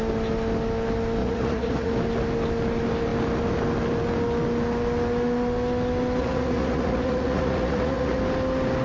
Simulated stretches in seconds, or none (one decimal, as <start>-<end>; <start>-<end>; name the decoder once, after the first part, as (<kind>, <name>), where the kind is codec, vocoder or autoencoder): 1.2-1.9 (vocoder, Vocos); 6.2-8.2